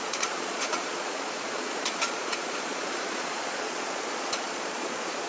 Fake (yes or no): yes